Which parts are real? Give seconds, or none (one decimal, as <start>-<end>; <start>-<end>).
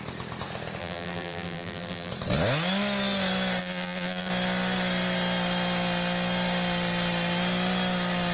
0.0-0.8; 2.1-3.6; 4.3-8.3